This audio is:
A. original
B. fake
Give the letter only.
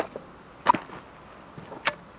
A